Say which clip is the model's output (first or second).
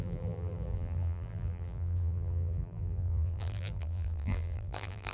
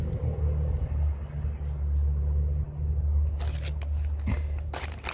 first